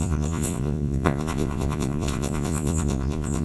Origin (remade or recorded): remade